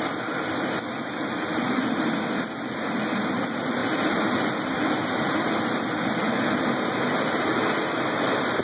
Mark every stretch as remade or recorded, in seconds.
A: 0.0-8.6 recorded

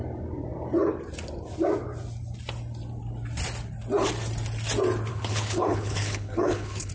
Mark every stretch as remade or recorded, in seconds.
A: 0.0-5.1 recorded; 5.1-6.9 remade

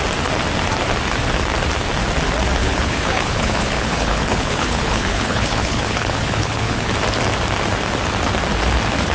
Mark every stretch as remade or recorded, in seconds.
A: 0.0-2.6 recorded; 2.6-6.9 remade; 6.9-9.1 recorded

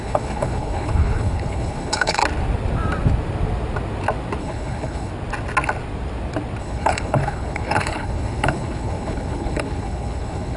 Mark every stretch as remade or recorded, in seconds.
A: 0.0-2.2 remade; 2.2-4.4 recorded; 4.4-5.1 remade; 5.1-6.6 recorded; 6.6-10.6 remade

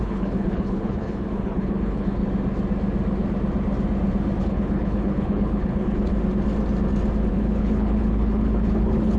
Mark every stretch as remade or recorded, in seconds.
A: 0.0-2.2 remade; 2.2-4.4 recorded; 4.4-6.1 remade; 6.1-7.3 recorded; 7.3-9.2 remade